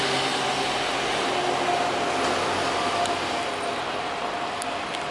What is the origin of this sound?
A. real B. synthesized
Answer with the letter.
A